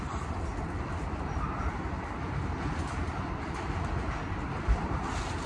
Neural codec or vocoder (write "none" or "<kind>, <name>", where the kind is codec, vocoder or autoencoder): none